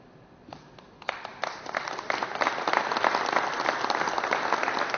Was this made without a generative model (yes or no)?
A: no